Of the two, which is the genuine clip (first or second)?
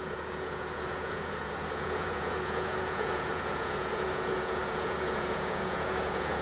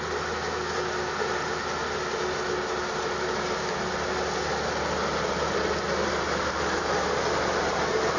second